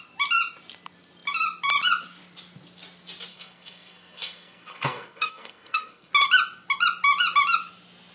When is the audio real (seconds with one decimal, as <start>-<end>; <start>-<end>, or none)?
0.0-3.3; 6.1-8.1